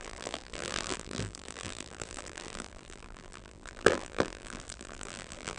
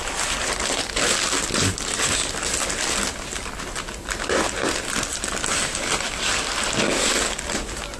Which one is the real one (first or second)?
second